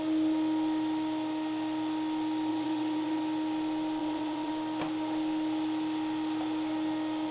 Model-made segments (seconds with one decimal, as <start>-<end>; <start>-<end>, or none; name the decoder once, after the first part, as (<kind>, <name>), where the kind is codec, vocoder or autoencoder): 2.5-3.2 (vocoder, WaveNeXt); 4.0-4.5